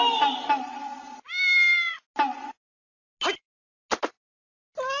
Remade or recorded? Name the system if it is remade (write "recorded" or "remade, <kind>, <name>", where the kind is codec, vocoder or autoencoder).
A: recorded